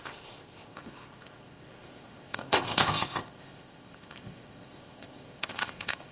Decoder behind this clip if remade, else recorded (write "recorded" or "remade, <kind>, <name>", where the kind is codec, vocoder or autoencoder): remade, codec, ZipCodec